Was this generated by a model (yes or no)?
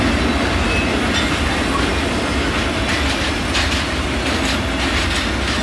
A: no